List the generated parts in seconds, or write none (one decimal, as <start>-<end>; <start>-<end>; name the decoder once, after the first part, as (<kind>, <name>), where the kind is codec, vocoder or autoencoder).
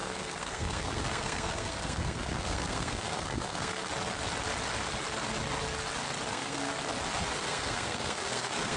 0.0-3.9 (codec, SNAC); 6.3-6.7; 7.4-8.8